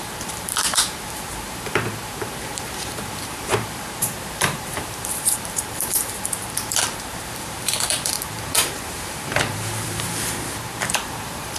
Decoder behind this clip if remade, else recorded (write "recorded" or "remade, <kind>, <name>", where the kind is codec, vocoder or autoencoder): remade, vocoder, BigVGAN v2